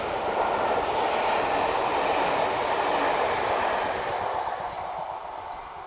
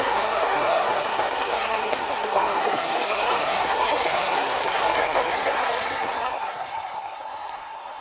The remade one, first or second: second